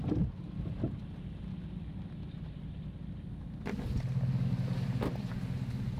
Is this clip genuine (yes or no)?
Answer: yes